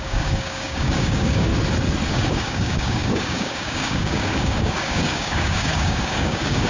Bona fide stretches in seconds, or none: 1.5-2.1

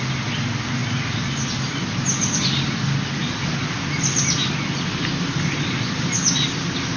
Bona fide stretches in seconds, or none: 0.0-7.0